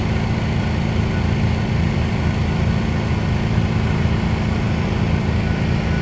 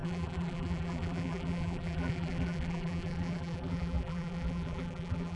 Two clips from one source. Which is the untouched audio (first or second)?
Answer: first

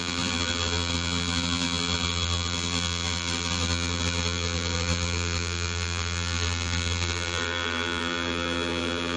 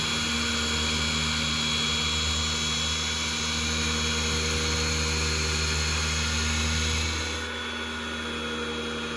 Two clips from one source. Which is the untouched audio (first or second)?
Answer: second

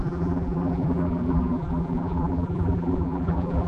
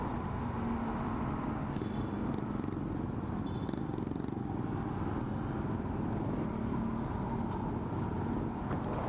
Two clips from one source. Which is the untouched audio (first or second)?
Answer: second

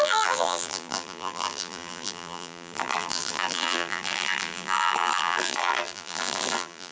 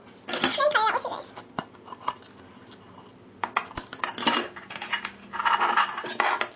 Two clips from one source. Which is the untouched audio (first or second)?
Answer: second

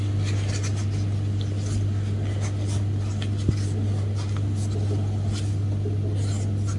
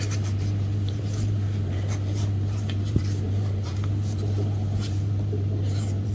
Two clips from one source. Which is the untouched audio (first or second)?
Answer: first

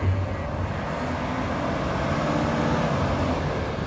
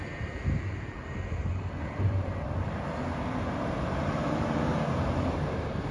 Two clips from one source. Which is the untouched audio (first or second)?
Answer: first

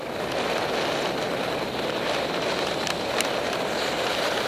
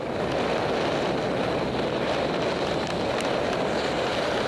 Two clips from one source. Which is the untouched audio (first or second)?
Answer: second